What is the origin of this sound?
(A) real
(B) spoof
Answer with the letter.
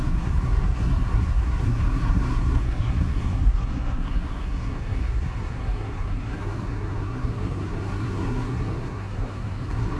B